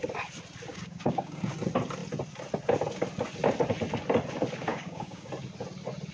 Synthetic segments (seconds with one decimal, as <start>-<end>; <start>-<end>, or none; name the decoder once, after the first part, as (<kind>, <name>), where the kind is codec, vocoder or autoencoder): 0.7-1.4 (codec, DAC); 4.7-5.3